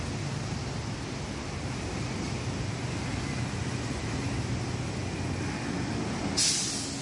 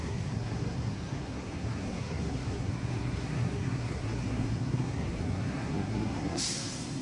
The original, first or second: first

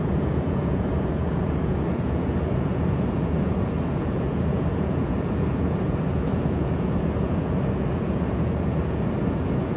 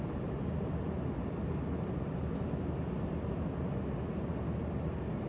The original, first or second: second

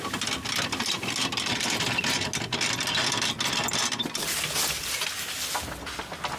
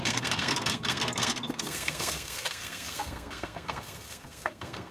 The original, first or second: first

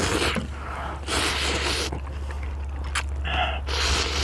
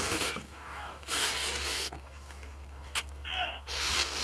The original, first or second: first